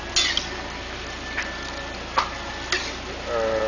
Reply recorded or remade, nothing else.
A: recorded